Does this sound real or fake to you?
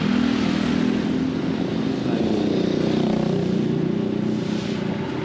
real